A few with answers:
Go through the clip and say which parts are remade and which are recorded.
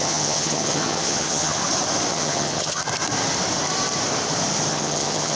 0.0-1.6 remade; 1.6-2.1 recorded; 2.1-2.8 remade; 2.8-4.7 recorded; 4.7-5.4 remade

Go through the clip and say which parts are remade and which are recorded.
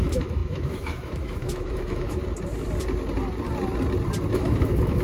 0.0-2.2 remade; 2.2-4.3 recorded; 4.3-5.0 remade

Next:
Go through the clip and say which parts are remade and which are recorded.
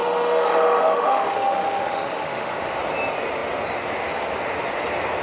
0.0-2.8 remade; 2.8-5.2 recorded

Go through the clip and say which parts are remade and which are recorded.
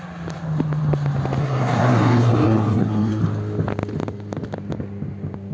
0.0-1.4 recorded; 1.4-3.2 remade; 3.2-5.5 recorded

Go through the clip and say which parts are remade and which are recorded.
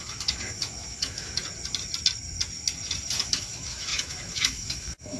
0.0-1.4 remade; 1.4-3.2 recorded; 3.2-5.2 remade